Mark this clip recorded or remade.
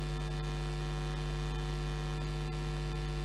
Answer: recorded